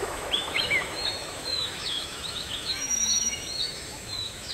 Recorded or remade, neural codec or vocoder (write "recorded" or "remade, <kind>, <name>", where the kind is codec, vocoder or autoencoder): remade, autoencoder, DAC-VAE